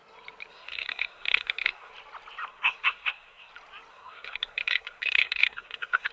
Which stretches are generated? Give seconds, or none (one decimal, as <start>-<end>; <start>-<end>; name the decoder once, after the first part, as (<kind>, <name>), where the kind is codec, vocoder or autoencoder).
0.5-1.9 (codec, SNAC); 2.5-3.5; 3.9-6.1